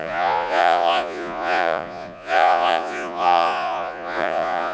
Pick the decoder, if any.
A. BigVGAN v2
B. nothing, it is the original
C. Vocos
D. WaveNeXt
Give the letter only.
C